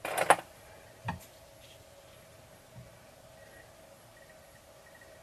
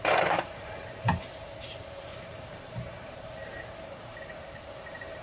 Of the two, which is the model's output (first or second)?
second